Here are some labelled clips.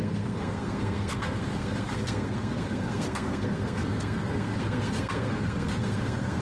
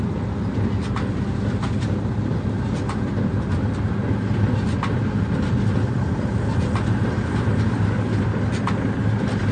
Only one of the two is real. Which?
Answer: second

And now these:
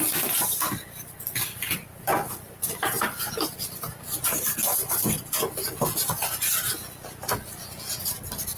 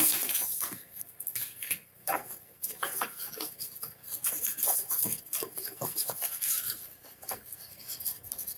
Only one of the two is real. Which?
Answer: first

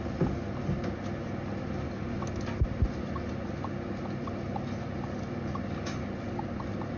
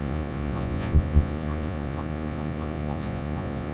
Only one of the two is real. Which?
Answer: first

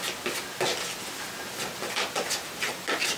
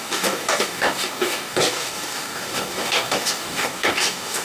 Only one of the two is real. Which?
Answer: first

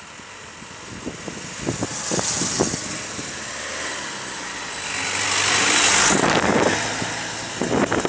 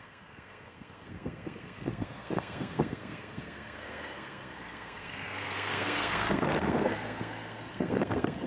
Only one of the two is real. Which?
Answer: first